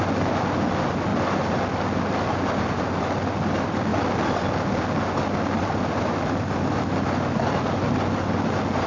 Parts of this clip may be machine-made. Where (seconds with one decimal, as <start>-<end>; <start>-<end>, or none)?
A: none